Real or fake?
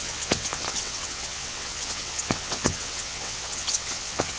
fake